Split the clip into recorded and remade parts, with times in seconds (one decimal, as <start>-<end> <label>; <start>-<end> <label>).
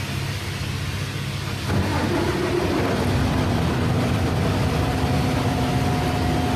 0.0-6.6 recorded